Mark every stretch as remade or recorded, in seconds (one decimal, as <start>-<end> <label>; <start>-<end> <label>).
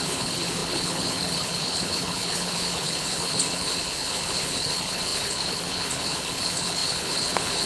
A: 0.0-7.7 remade